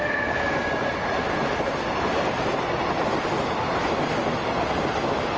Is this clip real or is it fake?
real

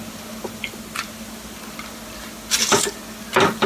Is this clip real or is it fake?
real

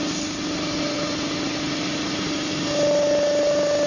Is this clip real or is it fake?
real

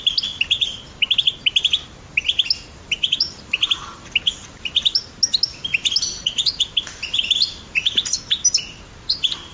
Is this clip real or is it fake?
real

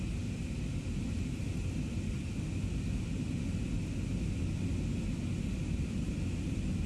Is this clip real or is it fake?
real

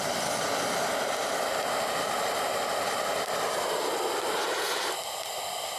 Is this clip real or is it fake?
real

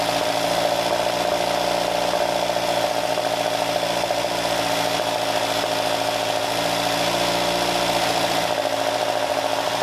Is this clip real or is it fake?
real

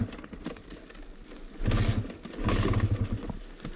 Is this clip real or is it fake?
real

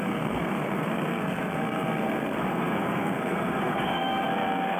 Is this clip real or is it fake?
fake